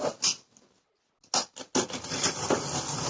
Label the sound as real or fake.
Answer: real